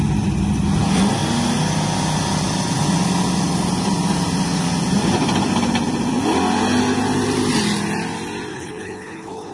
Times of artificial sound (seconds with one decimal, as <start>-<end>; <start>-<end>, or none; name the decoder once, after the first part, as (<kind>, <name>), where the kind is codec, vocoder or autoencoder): 8.5-9.5 (codec, HILCodec)